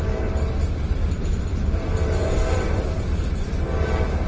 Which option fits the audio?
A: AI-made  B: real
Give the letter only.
B